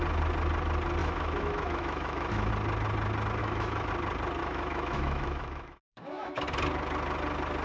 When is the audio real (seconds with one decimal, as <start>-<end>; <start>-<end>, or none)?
0.0-1.0; 2.5-3.4; 3.9-4.4; 6.4-7.6

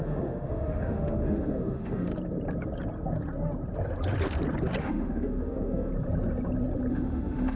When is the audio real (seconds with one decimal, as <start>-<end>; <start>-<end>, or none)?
2.1-4.8; 5.9-6.9

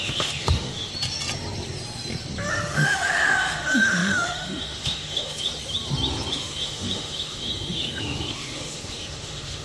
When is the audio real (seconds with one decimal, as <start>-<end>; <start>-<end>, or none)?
0.9-2.5; 5.5-6.3

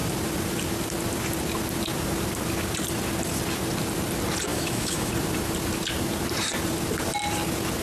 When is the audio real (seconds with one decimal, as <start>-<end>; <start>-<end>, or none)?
0.0-4.5; 5.1-7.8

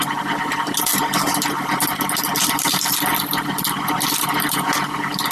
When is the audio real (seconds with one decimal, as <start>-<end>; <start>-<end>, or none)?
0.0-5.3